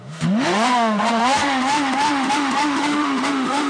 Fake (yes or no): yes